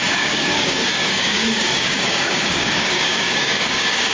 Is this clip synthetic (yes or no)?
yes